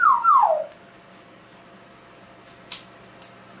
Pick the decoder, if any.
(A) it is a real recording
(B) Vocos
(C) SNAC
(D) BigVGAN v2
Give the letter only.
A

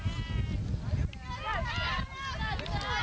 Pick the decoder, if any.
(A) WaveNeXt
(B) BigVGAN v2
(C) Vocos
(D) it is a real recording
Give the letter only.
D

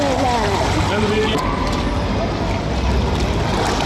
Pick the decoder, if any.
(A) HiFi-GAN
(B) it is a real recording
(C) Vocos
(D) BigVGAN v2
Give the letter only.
B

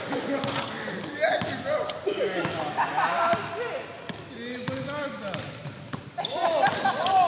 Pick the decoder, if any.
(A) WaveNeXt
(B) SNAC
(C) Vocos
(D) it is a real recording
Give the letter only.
D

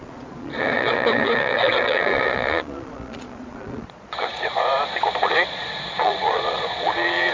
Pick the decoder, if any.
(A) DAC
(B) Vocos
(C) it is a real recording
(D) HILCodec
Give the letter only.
B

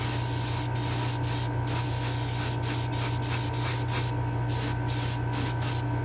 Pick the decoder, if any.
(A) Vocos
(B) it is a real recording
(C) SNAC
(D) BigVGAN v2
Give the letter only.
B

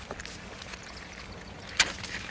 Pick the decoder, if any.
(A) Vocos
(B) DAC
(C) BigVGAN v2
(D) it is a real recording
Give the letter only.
D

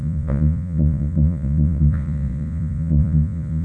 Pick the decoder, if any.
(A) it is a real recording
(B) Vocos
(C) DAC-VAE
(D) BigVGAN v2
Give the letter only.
B